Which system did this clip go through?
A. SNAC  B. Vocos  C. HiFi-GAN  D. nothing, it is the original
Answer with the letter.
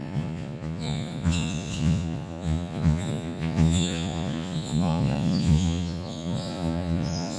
B